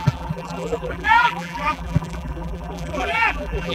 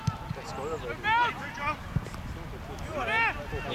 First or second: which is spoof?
first